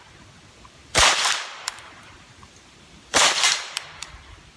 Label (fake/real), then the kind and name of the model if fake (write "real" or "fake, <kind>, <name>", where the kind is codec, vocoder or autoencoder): fake, vocoder, BigVGAN v2